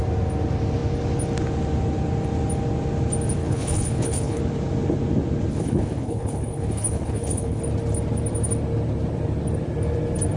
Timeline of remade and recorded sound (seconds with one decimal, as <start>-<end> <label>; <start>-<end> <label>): 0.0-3.4 recorded; 3.4-4.4 remade; 4.4-5.5 recorded; 5.5-7.6 remade; 7.6-10.4 recorded